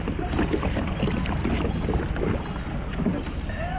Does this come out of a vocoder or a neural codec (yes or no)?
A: no